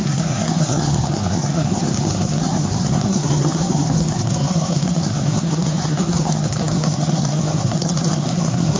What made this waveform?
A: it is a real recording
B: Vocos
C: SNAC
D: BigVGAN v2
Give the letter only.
C